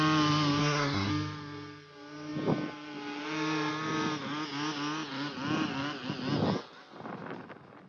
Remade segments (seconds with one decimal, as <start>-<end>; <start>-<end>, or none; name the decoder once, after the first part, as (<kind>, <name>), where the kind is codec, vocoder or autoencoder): 0.6-1.1 (codec, SNAC)